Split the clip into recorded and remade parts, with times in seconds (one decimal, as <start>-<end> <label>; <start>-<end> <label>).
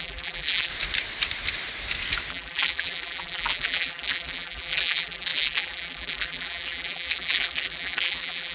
0.0-0.7 remade; 0.7-2.3 recorded; 2.3-8.5 remade